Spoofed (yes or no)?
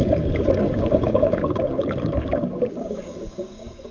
yes